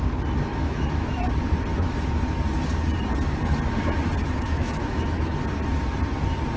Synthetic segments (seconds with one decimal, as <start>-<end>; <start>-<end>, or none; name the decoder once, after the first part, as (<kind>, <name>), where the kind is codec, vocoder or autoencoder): 0.5-1.1 (autoencoder, DAC-VAE); 1.7-2.2; 4.2-5.4